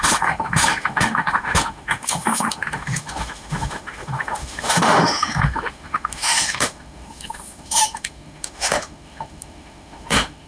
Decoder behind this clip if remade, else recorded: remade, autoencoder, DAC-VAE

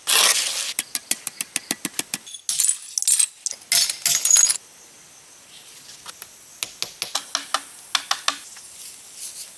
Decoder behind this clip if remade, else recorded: recorded